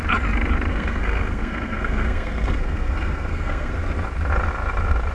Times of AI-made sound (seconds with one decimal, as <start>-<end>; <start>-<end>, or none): 0.7-3.8